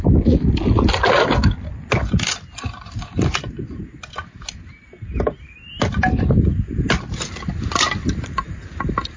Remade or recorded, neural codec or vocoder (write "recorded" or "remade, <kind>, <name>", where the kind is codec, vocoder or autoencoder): recorded